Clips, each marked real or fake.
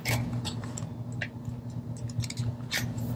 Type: real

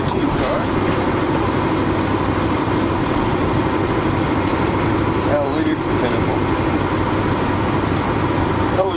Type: fake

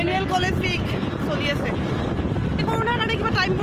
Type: real